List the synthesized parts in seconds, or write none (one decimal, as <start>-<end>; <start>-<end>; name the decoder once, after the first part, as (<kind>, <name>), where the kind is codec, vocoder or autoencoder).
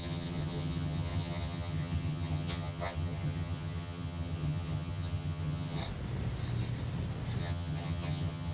0.0-5.8 (vocoder, HiFi-GAN); 7.4-8.5